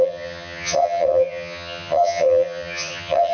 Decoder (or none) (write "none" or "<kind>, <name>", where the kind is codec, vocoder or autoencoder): vocoder, HiFi-GAN